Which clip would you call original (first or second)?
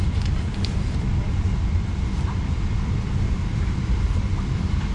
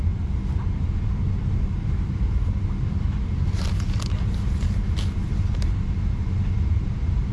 second